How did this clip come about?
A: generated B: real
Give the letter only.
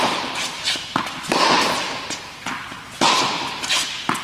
B